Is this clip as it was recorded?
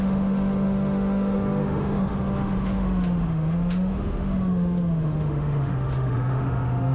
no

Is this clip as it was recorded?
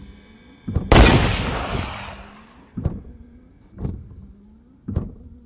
yes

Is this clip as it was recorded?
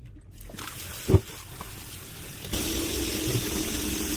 yes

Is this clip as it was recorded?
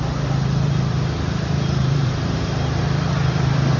no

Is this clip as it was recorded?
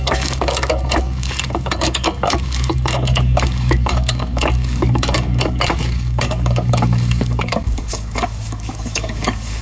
no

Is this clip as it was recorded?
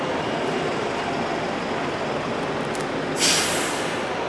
yes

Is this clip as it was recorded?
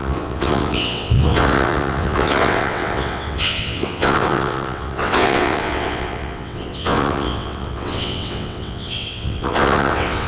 no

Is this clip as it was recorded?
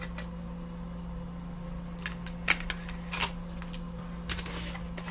yes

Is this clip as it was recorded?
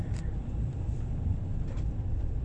yes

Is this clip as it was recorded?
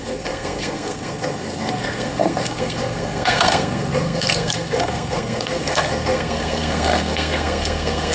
no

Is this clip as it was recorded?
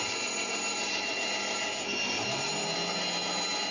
yes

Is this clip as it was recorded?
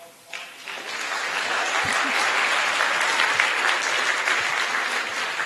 yes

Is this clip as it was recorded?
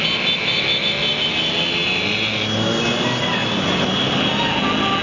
yes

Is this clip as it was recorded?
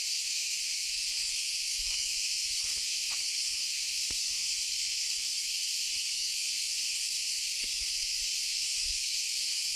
no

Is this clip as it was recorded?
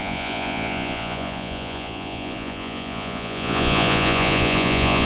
no